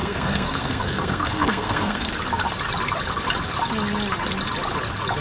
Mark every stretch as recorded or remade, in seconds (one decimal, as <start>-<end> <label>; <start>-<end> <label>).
0.0-2.1 remade; 2.1-5.2 recorded